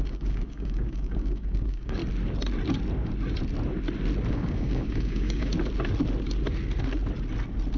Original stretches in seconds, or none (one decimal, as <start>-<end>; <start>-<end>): 2.0-4.3; 5.5-7.8

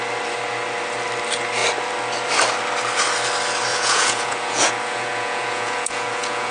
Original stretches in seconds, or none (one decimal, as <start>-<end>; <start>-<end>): 0.0-3.7

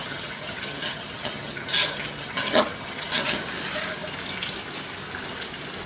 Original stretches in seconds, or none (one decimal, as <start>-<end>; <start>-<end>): 3.5-5.9

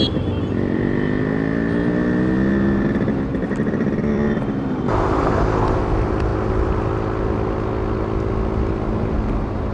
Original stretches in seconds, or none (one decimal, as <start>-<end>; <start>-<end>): 0.0-3.3; 5.4-9.7

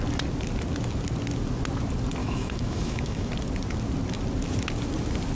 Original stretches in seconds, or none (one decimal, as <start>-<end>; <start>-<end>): 0.0-2.2; 3.3-5.3

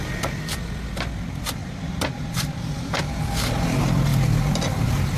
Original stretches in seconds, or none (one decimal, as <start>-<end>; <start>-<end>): 0.0-1.6; 3.0-5.2

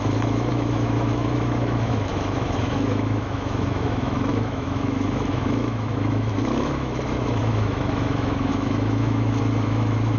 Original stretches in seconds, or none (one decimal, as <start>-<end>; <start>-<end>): none